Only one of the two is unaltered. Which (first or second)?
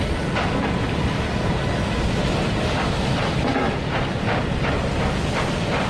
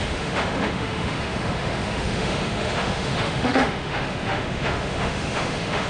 first